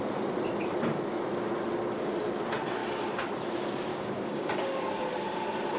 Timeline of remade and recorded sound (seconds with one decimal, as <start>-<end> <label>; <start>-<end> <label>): 0.0-3.9 recorded; 3.9-4.8 remade; 4.8-5.8 recorded